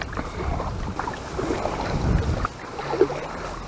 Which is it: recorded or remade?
recorded